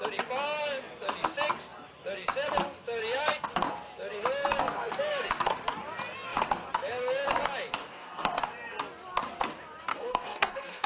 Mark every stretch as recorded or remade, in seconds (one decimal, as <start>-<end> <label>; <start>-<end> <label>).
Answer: 0.0-7.8 recorded; 7.8-8.4 remade; 8.4-9.9 recorded; 9.9-10.9 remade